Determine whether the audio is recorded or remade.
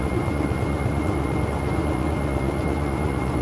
remade